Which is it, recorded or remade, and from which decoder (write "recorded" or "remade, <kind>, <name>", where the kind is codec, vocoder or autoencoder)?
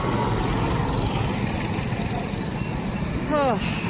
recorded